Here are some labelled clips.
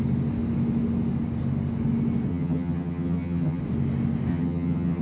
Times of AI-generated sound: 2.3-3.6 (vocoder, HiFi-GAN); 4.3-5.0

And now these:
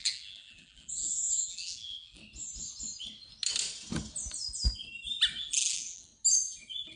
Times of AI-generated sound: 0.0-2.2 (vocoder, BigVGAN v2); 5.4-6.1

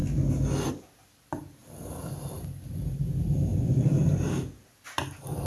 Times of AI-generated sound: 3.5-4.1 (vocoder, BigVGAN v2)

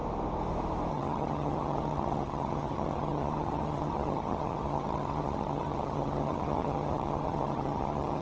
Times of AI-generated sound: 0.9-8.2 (vocoder, HiFi-GAN)